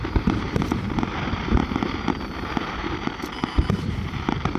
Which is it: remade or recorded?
remade